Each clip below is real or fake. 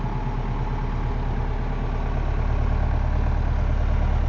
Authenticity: real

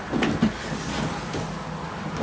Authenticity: real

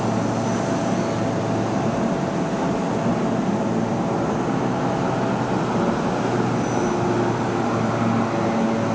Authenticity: real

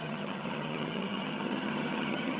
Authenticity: fake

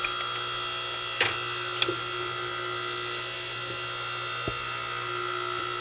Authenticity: real